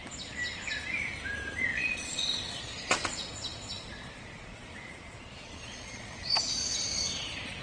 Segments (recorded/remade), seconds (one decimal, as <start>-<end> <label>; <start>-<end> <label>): 0.0-1.7 recorded; 1.7-6.3 remade; 6.3-7.6 recorded